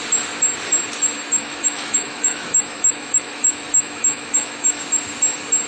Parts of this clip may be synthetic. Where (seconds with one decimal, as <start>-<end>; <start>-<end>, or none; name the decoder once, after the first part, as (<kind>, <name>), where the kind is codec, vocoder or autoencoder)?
1.4-4.8 (autoencoder, DAC-VAE)